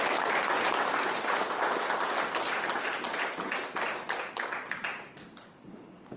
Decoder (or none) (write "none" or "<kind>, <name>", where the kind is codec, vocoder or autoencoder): none